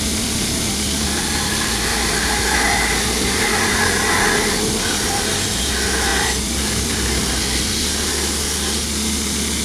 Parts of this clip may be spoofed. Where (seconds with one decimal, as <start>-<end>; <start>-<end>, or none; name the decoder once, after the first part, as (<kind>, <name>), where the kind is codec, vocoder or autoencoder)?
1.9-3.8 (vocoder, BigVGAN v2); 6.1-6.6